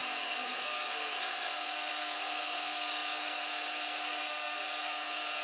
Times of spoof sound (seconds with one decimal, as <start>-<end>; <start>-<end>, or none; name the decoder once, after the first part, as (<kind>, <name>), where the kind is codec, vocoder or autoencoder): 0.0-5.4 (codec, SNAC)